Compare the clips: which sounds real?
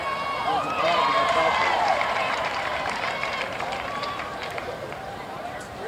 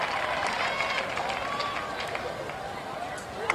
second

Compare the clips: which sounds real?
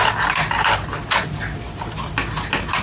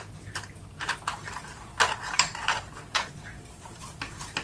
first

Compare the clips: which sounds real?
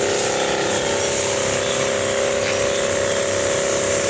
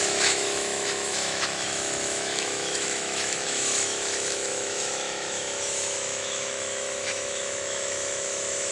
first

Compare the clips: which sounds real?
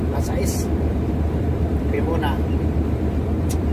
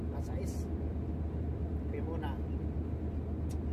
second